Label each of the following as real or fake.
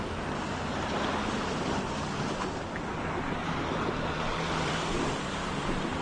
real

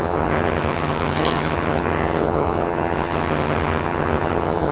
fake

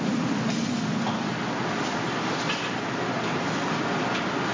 real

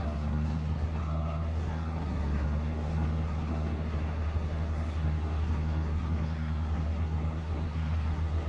fake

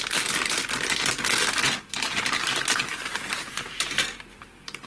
real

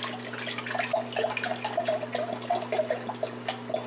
real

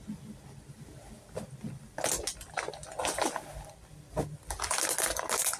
real